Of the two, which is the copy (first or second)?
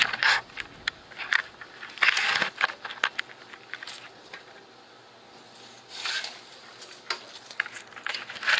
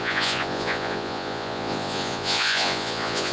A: second